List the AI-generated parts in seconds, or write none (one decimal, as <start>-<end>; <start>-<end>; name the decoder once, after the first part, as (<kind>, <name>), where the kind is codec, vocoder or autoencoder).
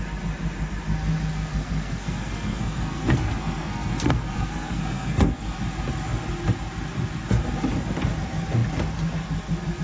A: 1.5-5.6 (codec, SNAC)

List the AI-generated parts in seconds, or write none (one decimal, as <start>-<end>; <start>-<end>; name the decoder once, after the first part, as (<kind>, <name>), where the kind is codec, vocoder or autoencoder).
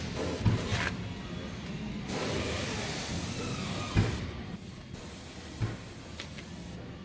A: none